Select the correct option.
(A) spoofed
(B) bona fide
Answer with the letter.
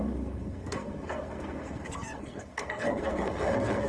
A